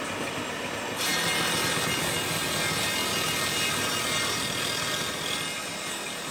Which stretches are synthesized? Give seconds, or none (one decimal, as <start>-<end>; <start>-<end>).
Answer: none